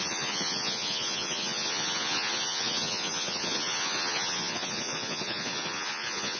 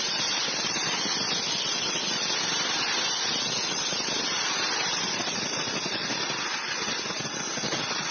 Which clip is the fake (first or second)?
first